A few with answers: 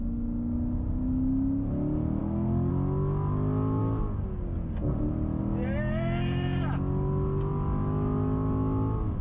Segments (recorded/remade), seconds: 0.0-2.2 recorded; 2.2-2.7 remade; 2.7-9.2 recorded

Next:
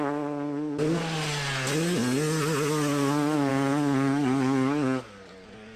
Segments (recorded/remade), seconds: 0.0-3.5 recorded; 3.5-5.8 remade

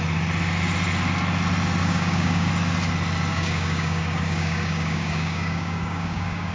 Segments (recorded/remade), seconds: 0.0-1.8 recorded; 1.8-2.5 remade; 2.5-3.3 recorded; 3.3-6.5 remade

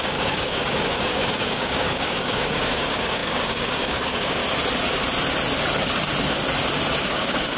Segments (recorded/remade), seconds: 0.0-4.4 remade; 4.4-7.0 recorded; 7.0-7.6 remade